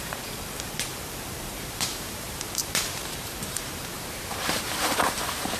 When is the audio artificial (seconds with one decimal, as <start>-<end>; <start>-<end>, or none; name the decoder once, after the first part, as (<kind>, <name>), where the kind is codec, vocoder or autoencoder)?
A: 0.0-5.6 (vocoder, BigVGAN v2)